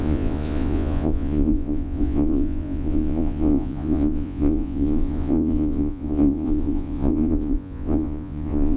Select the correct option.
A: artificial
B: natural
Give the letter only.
A